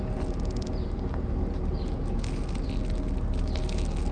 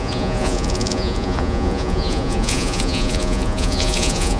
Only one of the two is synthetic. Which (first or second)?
second